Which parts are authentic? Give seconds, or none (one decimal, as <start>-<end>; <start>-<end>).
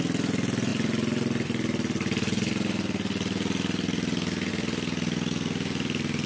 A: 0.0-6.3